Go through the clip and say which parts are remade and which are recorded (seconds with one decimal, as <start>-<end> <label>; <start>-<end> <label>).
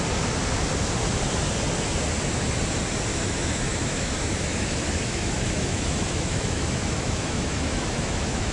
0.0-3.1 recorded; 3.1-8.5 remade